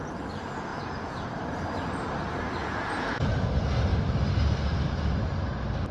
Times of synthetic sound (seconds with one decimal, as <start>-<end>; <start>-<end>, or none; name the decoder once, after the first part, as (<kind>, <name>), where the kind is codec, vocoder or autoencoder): 0.7-1.3 (vocoder, Vocos); 2.6-3.5